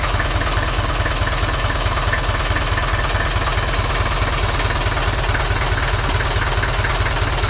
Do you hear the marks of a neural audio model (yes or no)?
no